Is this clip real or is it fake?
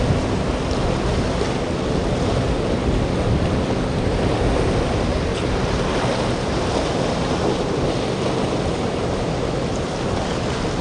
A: real